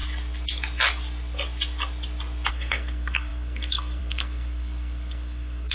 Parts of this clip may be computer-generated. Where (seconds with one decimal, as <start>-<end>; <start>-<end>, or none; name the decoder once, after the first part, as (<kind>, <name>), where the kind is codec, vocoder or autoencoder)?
2.5-5.7 (codec, SNAC)